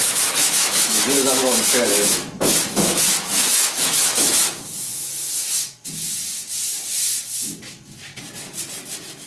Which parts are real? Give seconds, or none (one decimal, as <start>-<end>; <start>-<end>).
6.4-7.2; 8.1-8.8